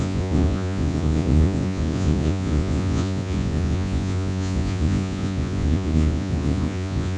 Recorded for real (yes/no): no